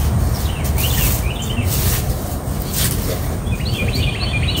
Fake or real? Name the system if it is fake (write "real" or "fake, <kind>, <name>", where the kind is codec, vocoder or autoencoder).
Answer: real